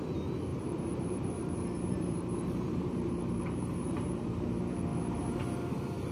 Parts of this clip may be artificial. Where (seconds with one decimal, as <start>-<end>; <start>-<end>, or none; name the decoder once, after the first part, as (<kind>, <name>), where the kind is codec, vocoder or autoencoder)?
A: 0.5-4.2 (vocoder, BigVGAN v2); 4.9-5.4